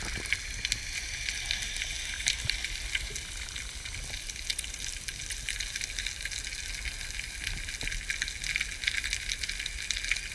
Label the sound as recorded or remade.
recorded